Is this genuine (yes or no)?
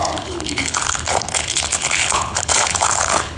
no